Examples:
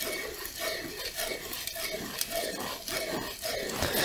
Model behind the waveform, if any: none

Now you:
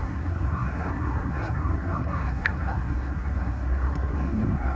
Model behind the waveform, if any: codec, SNAC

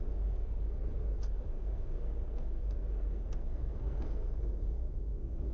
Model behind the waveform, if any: codec, SNAC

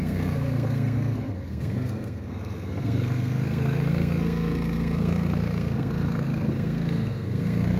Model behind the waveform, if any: codec, SNAC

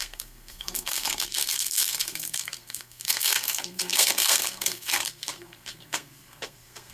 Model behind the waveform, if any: codec, SNAC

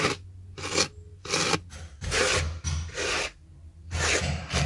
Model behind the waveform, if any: none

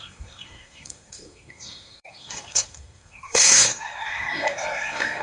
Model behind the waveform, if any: codec, SNAC